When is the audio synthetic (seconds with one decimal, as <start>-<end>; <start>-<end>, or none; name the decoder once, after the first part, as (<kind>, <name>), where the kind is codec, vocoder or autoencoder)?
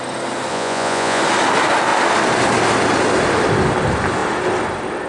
0.5-1.2 (vocoder, Vocos)